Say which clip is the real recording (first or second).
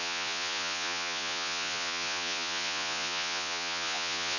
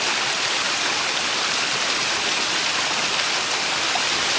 second